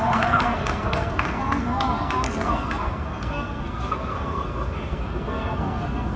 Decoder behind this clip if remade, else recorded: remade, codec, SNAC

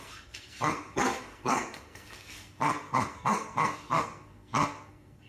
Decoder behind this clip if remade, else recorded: remade, codec, SNAC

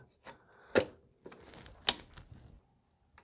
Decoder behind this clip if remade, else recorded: recorded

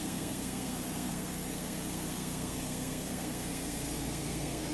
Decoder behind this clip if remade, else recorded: remade, codec, SNAC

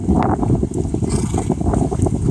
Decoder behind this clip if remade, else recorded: recorded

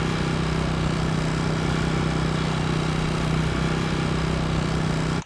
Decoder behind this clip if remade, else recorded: recorded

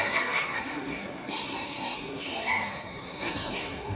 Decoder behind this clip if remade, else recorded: remade, codec, SNAC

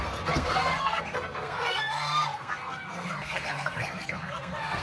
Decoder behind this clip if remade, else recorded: remade, codec, SNAC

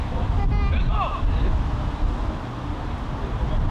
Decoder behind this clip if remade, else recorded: recorded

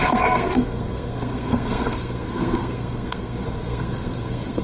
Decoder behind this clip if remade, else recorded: remade, codec, SNAC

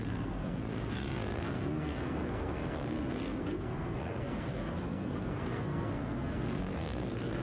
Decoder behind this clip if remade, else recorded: remade, codec, SNAC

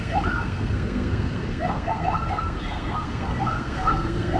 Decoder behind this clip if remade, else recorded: remade, codec, SNAC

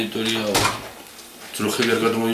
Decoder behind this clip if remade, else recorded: recorded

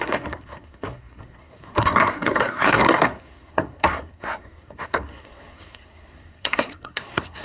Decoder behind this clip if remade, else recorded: remade, codec, SNAC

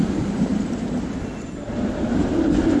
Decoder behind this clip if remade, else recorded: recorded